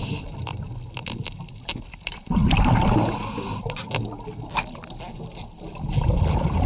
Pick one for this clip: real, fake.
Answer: real